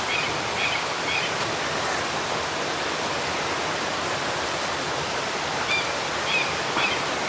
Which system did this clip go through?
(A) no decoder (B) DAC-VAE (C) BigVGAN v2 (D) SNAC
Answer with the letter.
A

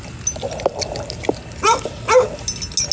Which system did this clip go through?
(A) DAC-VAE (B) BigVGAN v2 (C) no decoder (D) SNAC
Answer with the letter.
C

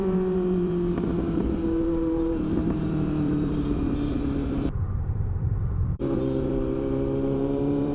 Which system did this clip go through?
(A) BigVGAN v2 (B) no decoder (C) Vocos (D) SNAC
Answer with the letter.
A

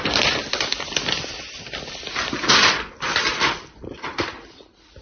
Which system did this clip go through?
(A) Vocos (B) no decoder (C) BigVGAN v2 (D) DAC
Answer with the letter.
C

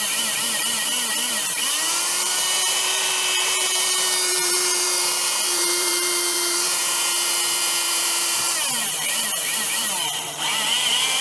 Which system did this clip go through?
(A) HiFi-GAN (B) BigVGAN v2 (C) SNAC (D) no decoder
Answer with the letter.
B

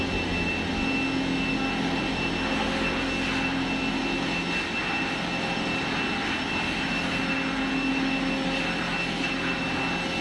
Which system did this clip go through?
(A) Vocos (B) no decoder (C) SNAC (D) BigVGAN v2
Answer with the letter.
B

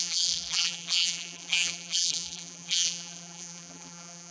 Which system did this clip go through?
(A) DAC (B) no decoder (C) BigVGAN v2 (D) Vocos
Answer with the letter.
C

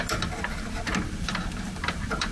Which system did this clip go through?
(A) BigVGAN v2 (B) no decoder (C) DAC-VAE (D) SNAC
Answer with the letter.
B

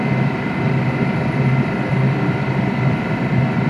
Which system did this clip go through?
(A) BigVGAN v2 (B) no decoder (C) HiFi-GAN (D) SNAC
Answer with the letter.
A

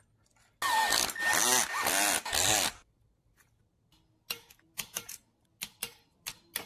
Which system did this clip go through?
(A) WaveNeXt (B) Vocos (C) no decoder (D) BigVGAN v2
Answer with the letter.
C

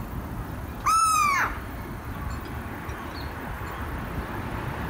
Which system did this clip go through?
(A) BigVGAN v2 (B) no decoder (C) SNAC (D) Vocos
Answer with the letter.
A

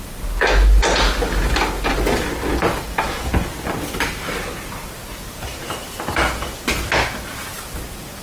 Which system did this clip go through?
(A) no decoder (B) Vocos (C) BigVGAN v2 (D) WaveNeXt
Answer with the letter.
A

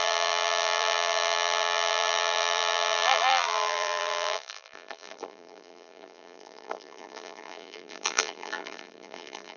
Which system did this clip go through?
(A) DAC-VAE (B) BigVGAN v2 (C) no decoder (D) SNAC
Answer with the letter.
B